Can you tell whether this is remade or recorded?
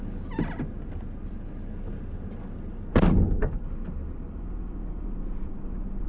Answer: recorded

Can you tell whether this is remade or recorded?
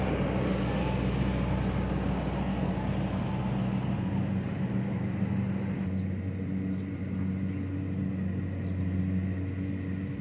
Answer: recorded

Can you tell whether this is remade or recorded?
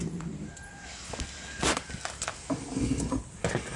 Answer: recorded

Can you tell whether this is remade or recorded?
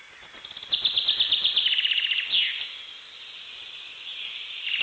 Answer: recorded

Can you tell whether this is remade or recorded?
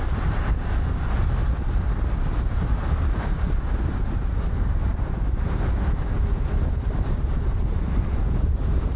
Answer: recorded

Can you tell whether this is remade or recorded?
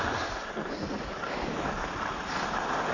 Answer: recorded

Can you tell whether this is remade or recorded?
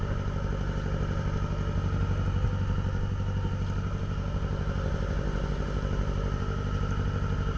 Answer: recorded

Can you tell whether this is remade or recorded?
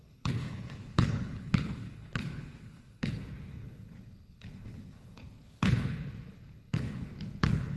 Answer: remade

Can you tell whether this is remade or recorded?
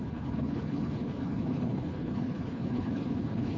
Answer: remade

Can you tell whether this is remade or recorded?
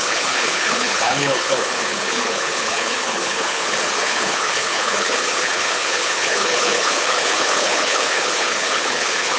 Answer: remade